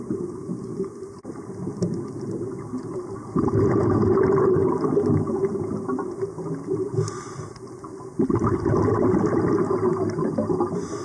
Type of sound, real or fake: real